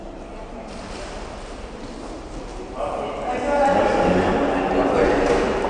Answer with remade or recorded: recorded